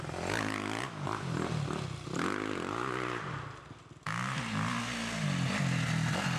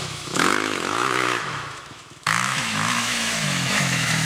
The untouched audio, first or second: first